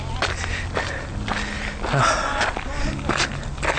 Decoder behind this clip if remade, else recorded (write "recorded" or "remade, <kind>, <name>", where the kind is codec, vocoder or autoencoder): recorded